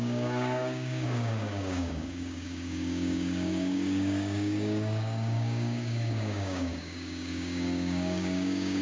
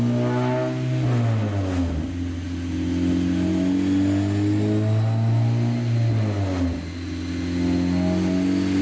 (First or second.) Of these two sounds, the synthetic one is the first